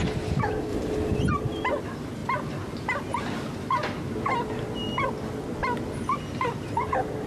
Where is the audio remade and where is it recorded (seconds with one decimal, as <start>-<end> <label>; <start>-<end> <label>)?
0.0-0.7 recorded; 0.7-1.3 remade; 1.3-5.6 recorded; 5.6-6.7 remade; 6.7-7.3 recorded